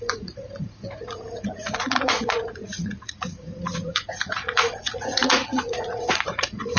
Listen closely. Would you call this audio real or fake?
fake